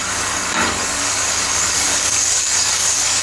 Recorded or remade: remade